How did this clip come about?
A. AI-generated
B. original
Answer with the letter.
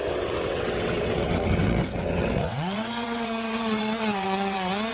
A